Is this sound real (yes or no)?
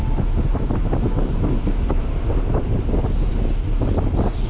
yes